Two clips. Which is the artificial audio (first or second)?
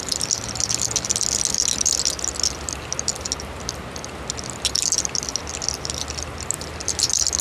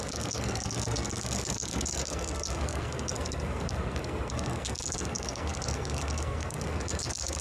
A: second